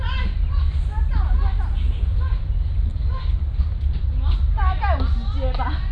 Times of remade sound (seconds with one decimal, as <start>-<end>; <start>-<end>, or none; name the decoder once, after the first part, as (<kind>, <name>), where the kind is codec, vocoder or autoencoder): none